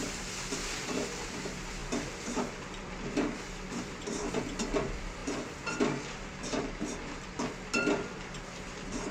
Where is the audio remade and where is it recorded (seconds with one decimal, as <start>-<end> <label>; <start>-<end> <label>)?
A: 0.0-9.1 remade